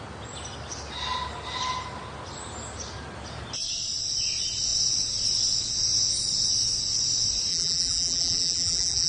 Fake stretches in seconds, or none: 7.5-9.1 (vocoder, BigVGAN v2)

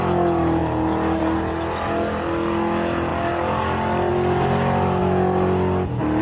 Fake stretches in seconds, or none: none

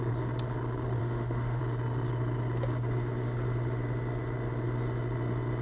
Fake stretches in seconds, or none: 1.0-1.6 (autoencoder, DAC-VAE)

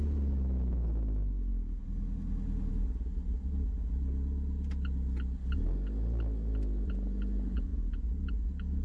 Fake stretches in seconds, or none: none

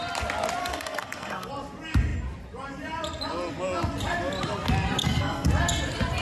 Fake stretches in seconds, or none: 0.6-1.5 (codec, SNAC); 5.0-5.5

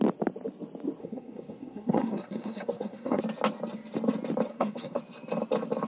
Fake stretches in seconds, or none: 1.0-3.2 (codec, SNAC); 4.5-5.0